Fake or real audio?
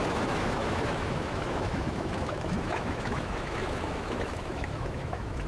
fake